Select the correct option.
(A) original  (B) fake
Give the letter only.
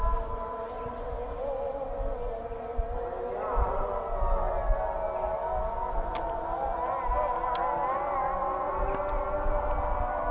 A